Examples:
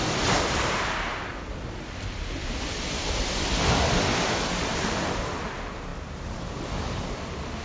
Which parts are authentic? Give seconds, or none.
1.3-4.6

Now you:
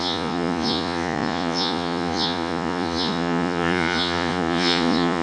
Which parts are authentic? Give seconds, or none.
none

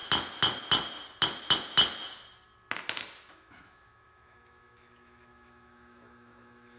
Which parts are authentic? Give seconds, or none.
0.0-3.3

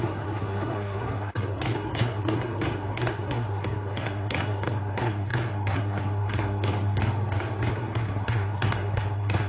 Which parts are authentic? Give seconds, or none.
7.0-7.7

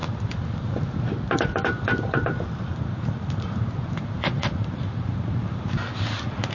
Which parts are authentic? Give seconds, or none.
none

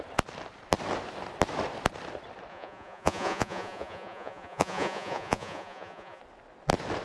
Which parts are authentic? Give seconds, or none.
0.0-2.5; 6.2-7.0